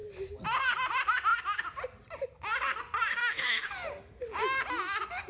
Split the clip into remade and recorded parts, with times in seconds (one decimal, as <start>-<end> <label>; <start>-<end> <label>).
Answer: 0.0-3.2 recorded; 3.2-3.7 remade; 3.7-5.3 recorded